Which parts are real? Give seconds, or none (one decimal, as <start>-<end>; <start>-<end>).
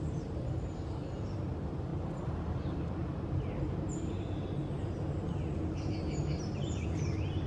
1.9-6.4